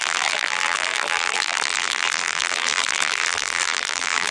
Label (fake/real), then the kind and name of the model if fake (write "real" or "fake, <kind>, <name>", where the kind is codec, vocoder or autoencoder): fake, vocoder, BigVGAN v2